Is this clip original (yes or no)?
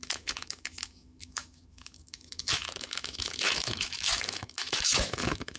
no